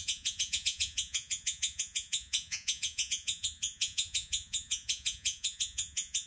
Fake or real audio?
fake